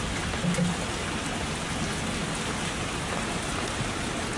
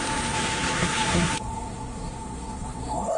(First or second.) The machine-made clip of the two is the second